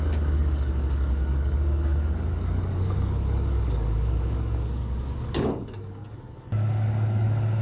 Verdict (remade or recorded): remade